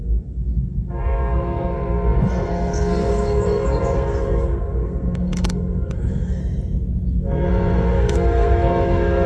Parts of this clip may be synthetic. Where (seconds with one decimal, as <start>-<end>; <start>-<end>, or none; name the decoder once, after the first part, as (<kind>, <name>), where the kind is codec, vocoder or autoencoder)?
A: 0.0-6.4 (codec, SNAC); 7.1-9.3